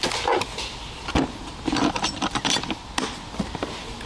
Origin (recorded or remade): recorded